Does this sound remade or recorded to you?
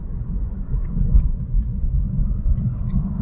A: remade